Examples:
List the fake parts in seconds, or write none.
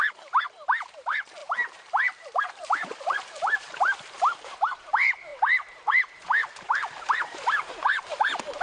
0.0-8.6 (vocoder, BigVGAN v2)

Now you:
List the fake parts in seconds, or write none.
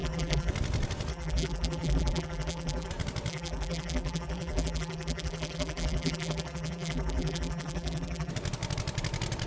0.0-0.5 (vocoder, BigVGAN v2); 1.1-2.9; 3.3-8.3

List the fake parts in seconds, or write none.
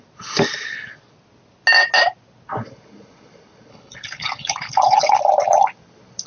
3.7-5.2 (codec, HILCodec)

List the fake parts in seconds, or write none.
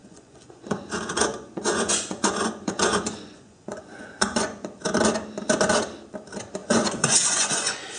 0.0-4.8 (vocoder, Vocos); 6.6-8.0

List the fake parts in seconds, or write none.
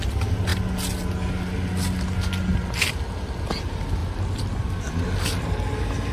none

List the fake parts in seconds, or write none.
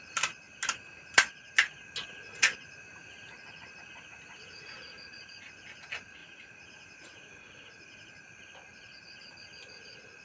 6.2-8.1 (vocoder, Vocos)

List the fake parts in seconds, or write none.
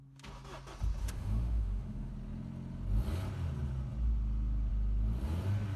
1.0-2.1 (autoencoder, DAC-VAE)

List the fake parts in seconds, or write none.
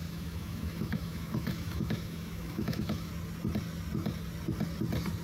0.0-3.1 (autoencoder, DAC-VAE)